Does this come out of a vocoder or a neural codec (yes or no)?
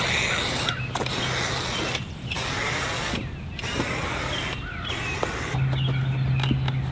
no